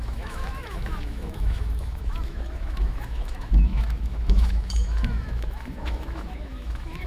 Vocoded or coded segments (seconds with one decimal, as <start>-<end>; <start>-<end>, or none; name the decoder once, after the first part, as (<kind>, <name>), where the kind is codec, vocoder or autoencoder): 0.0-7.1 (autoencoder, DAC-VAE)